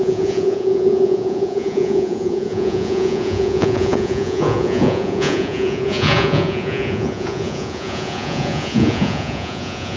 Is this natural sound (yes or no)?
no